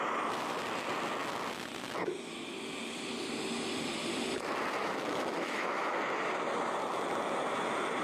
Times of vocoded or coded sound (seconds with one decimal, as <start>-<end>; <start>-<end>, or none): 4.8-6.0